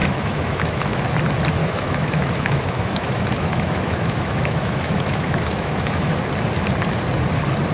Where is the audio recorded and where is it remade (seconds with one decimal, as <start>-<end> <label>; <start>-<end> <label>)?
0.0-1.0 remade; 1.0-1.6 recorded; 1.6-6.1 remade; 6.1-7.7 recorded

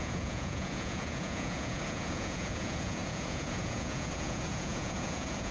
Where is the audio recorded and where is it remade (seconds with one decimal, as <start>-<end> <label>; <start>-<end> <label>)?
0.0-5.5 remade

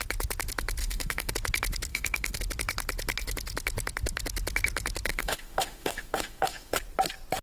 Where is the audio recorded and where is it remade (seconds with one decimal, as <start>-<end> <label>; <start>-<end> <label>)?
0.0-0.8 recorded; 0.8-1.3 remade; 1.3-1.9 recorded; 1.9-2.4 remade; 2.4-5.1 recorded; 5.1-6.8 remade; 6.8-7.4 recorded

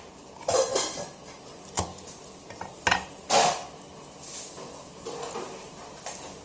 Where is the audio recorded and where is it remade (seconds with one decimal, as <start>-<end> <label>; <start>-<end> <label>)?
0.0-6.4 recorded

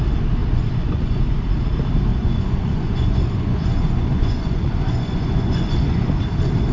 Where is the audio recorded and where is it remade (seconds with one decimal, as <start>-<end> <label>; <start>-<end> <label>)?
0.0-0.4 recorded; 0.4-1.2 remade; 1.2-2.1 recorded; 2.1-6.1 remade; 6.1-6.7 recorded

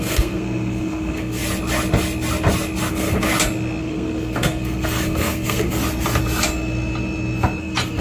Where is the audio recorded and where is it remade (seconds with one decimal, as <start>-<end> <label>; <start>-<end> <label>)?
0.0-1.4 remade; 1.4-2.9 recorded; 2.9-3.3 remade; 3.3-3.8 recorded; 3.8-5.8 remade; 5.8-7.6 recorded; 7.6-8.0 remade

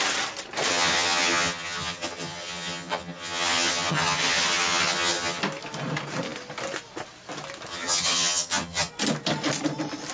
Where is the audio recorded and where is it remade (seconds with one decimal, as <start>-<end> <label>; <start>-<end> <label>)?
0.0-0.7 recorded; 0.7-5.4 remade; 5.4-7.7 recorded; 7.7-8.9 remade; 8.9-10.1 recorded

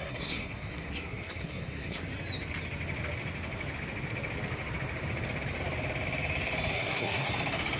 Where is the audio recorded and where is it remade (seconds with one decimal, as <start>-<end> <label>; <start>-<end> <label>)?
0.0-2.0 remade; 2.0-6.7 recorded; 6.7-7.3 remade; 7.3-7.8 recorded